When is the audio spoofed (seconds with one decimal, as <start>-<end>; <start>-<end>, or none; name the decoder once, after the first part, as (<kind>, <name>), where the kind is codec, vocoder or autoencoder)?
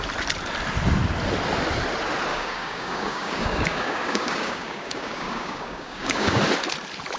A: 2.3-6.4 (codec, DAC)